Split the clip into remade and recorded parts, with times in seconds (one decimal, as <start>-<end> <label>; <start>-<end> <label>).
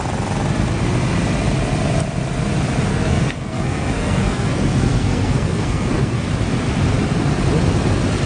0.0-2.9 recorded; 2.9-6.3 remade; 6.3-8.3 recorded